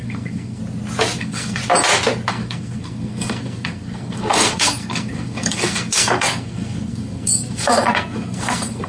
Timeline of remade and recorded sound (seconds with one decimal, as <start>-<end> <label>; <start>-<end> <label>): 0.0-0.6 remade; 0.6-1.2 recorded; 1.2-1.6 remade; 1.6-2.3 recorded; 2.3-8.9 remade